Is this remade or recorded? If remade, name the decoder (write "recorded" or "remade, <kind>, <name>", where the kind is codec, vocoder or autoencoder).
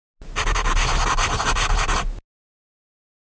recorded